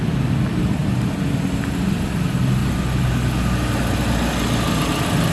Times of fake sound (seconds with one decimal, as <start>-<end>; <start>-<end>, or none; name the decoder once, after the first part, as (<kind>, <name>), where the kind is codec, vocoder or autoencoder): none